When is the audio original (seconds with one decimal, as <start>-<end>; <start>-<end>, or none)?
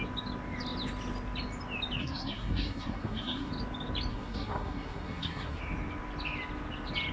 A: 0.0-2.0; 3.5-4.1; 5.6-7.1